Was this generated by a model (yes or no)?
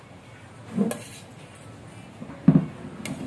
no